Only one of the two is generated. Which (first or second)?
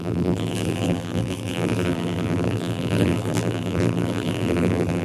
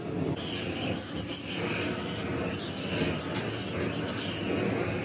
first